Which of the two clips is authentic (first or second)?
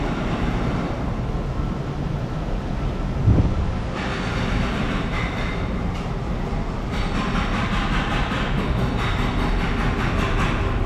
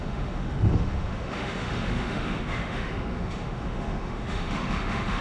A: first